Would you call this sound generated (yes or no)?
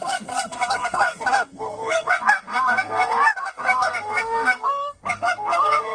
yes